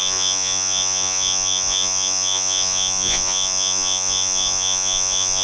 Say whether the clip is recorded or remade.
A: remade